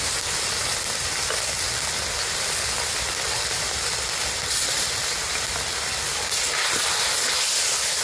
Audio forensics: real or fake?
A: real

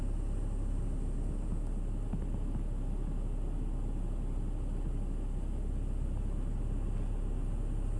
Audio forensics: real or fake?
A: real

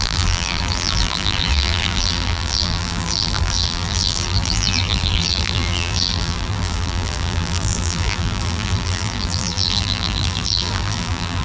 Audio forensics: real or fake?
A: fake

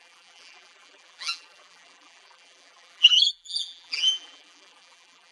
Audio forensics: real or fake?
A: fake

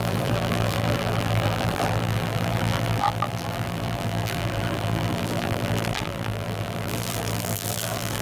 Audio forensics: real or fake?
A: fake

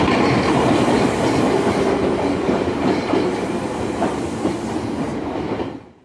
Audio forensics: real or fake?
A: fake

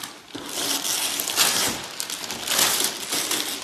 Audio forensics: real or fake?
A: real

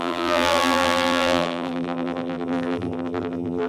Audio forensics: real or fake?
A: fake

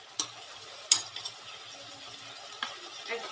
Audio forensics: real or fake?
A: real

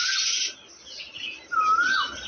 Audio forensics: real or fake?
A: real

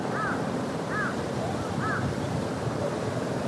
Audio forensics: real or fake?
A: fake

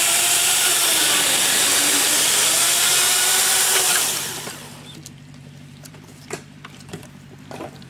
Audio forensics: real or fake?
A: fake